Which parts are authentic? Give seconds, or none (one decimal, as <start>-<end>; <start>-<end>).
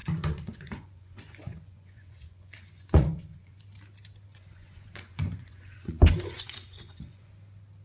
3.6-4.3; 7.3-7.8